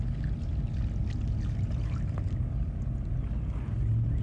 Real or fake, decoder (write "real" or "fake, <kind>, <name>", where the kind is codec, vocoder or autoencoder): real